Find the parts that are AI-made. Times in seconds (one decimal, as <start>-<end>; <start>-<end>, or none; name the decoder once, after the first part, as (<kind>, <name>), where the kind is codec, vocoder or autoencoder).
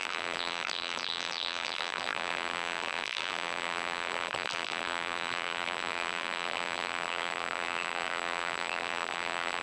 0.0-9.6 (vocoder, BigVGAN v2)